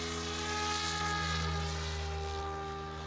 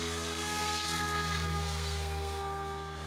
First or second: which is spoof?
second